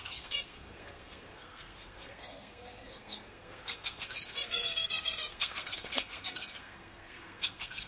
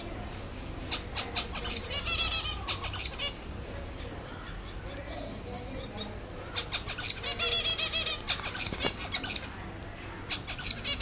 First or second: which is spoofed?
first